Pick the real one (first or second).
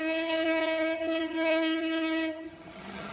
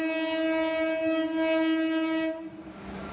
second